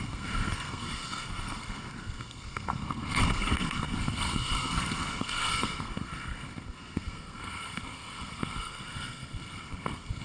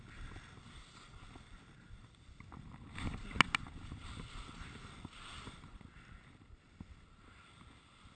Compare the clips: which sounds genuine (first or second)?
second